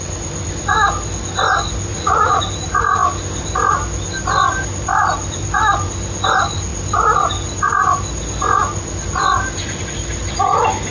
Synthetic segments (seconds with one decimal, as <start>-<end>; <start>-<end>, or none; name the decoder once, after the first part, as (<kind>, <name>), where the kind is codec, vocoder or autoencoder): 1.9-2.4 (vocoder, Vocos)